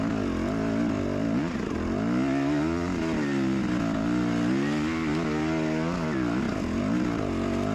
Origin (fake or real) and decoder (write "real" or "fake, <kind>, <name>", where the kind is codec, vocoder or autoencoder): real